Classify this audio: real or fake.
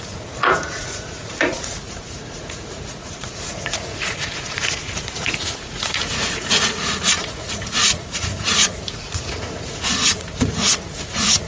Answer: fake